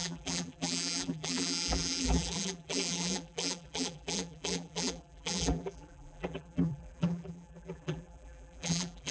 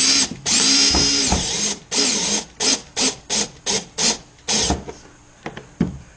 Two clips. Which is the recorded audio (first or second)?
second